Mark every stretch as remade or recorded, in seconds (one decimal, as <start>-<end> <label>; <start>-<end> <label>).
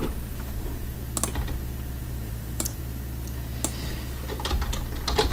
0.0-1.0 remade; 1.0-2.0 recorded; 2.0-2.8 remade; 2.8-5.3 recorded